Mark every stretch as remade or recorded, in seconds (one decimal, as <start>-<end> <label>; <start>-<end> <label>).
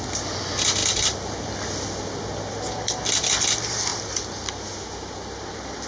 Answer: 0.0-5.9 recorded